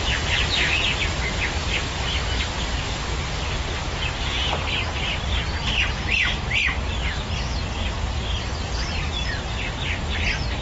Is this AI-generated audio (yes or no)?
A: no